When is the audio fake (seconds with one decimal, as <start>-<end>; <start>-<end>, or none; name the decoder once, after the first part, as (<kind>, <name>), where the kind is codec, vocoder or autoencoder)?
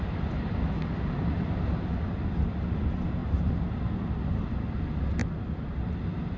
none